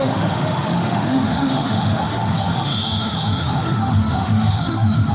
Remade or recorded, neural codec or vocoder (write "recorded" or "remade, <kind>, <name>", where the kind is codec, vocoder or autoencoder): remade, autoencoder, DAC-VAE